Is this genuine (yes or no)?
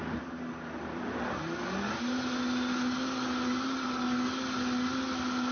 yes